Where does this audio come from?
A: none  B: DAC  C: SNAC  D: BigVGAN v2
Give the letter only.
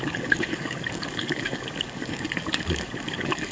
B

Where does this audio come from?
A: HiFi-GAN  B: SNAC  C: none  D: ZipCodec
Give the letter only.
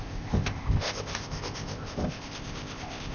D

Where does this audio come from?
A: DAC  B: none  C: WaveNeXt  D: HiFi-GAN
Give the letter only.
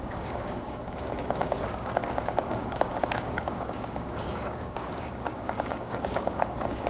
A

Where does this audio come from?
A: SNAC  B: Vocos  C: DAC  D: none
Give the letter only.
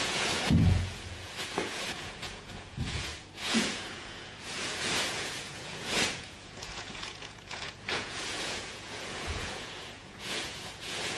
B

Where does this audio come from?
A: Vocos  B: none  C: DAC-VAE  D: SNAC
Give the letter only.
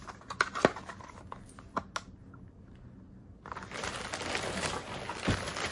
B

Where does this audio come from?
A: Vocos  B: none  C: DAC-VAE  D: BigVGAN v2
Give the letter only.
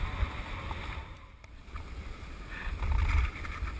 B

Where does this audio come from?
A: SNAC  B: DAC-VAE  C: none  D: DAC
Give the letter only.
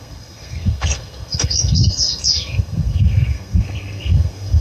A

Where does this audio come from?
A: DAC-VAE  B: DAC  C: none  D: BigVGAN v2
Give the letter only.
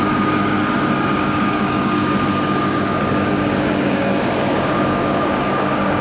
B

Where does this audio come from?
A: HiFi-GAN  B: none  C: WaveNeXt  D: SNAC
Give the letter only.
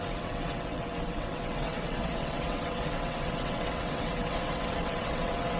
C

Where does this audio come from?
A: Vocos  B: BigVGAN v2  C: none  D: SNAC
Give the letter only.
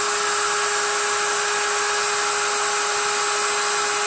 C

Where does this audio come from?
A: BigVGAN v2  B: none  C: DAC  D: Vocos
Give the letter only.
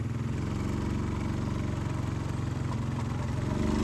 B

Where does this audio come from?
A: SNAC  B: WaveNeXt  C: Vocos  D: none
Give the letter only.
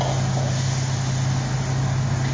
D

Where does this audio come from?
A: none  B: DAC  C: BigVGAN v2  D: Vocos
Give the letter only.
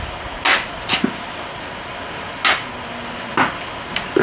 A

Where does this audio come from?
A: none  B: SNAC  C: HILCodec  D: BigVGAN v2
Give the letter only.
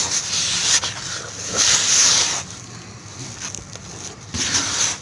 A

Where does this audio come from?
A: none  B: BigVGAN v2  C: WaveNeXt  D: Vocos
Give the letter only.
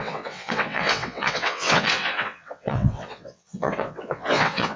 C